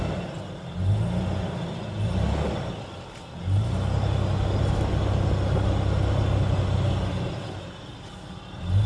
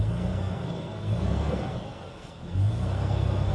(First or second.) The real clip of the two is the first